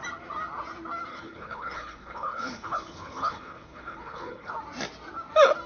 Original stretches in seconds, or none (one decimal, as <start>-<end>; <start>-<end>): 0.0-1.1; 4.5-5.7